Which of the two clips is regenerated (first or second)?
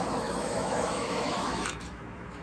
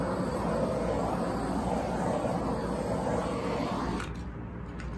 first